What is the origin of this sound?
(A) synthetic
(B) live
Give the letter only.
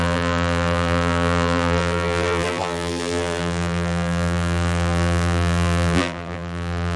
A